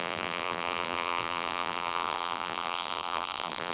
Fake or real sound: fake